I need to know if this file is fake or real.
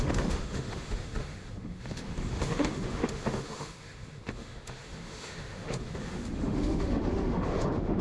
fake